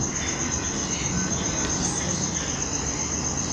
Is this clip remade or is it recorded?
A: recorded